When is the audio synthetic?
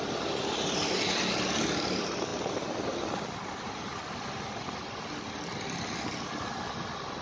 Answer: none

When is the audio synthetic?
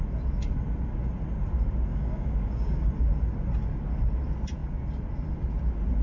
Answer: 1.9-2.9 (codec, DAC)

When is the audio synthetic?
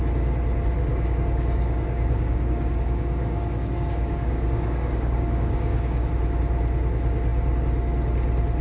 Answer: 0.9-6.1 (codec, DAC)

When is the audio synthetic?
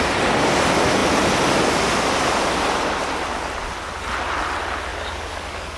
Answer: 4.9-5.8 (codec, DAC)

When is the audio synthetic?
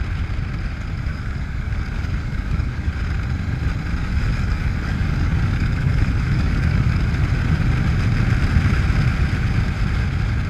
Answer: 1.1-2.9 (codec, DAC); 4.0-7.1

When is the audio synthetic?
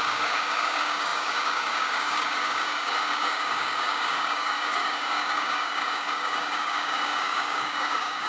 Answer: 0.0-8.3 (codec, DAC)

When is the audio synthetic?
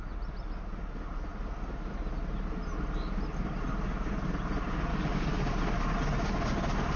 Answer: 4.9-5.4 (codec, DAC)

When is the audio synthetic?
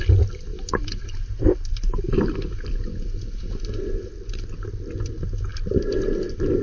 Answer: none